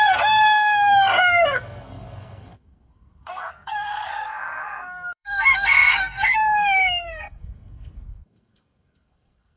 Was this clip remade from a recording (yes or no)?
yes